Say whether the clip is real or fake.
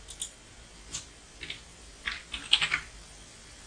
real